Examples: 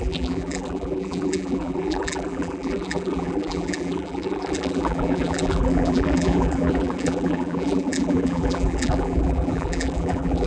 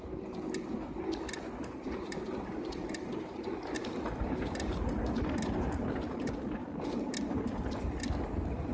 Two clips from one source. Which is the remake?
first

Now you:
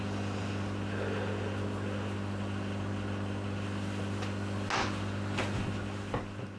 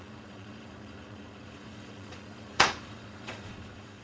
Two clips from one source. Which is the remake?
second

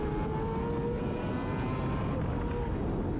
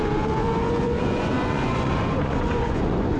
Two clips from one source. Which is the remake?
second